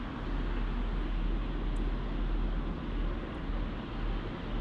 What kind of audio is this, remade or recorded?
recorded